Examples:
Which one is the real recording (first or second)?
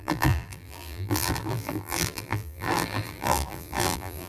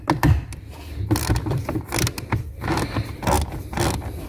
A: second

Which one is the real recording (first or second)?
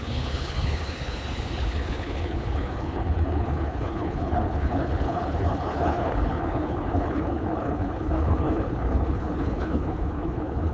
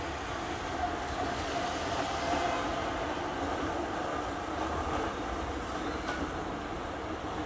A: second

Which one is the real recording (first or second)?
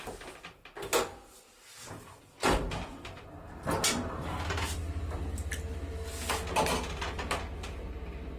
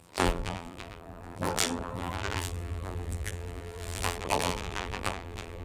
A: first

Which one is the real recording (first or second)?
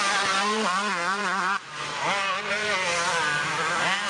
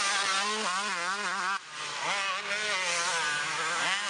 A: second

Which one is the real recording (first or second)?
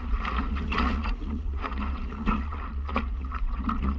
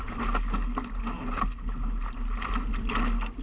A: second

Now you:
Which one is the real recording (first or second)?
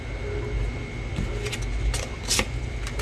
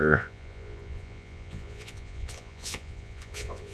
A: first